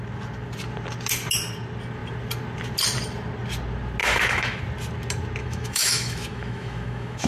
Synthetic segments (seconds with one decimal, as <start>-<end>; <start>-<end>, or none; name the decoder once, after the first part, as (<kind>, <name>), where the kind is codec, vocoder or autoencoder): 4.0-4.6 (autoencoder, DAC-VAE); 5.4-7.3